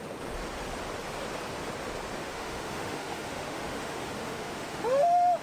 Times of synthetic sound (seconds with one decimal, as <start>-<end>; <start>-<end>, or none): 2.2-5.4